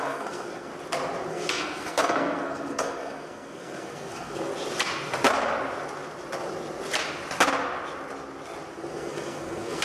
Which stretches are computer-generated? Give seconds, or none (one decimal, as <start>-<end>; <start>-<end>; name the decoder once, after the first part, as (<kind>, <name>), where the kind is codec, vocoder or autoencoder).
0.0-0.7 (codec, SNAC); 1.3-4.5; 8.9-9.8